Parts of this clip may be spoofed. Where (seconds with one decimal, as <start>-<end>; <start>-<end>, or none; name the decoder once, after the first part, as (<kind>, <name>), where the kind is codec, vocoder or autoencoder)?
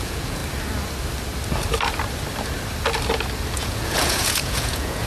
0.0-0.4 (vocoder, Vocos); 3.5-5.1